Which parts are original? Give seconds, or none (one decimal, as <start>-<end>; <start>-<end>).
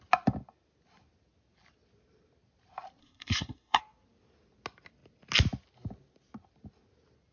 0.0-3.0; 3.8-7.3